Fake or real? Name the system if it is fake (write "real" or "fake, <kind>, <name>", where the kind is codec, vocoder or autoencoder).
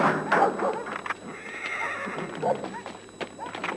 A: real